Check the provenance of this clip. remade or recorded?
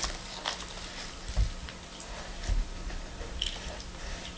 recorded